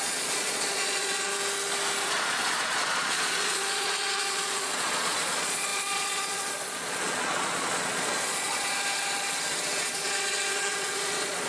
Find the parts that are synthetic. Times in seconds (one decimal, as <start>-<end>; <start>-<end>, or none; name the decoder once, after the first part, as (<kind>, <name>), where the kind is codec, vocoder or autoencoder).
0.0-1.3 (vocoder, Vocos); 2.1-8.7; 9.6-11.5